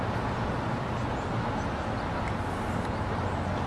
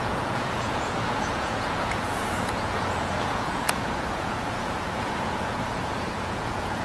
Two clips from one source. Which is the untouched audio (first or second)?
first